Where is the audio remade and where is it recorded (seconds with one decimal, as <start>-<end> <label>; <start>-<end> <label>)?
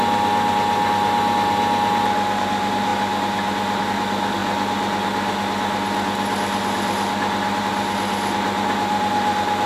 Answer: 0.0-9.7 recorded